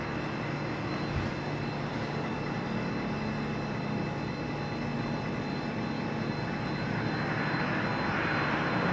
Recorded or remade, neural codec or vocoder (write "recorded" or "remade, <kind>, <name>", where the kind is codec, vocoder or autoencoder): recorded